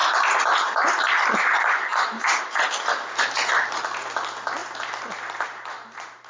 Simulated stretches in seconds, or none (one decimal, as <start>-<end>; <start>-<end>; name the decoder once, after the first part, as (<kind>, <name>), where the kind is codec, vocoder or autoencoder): none